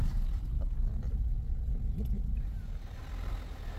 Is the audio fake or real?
real